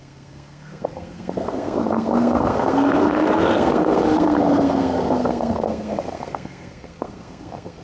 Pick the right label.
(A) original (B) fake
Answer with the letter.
B